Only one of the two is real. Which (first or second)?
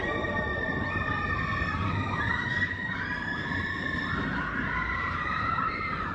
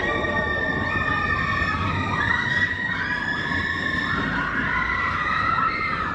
second